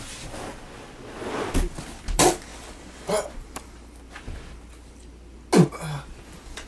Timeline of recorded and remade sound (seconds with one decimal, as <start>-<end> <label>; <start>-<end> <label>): 0.0-6.7 recorded